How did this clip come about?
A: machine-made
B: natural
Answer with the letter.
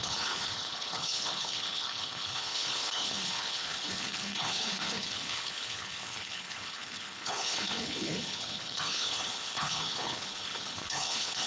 A